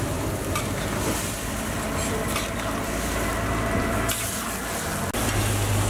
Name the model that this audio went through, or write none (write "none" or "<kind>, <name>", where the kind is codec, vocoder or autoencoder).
none